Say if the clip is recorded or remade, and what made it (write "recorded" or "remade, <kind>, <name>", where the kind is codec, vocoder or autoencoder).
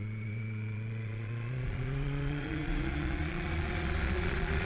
remade, vocoder, Vocos